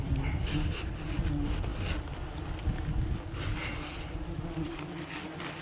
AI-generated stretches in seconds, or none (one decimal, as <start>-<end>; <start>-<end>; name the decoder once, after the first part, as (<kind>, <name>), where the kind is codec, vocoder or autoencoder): none